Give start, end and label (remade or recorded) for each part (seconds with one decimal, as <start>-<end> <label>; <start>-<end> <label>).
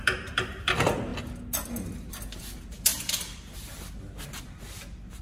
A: 0.0-5.2 recorded